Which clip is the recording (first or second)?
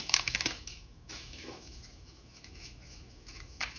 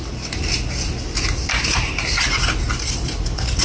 second